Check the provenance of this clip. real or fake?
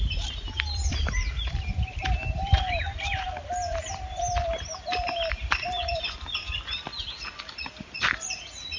fake